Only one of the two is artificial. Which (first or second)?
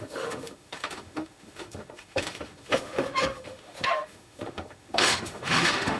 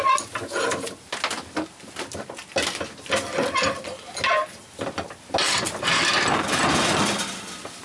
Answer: first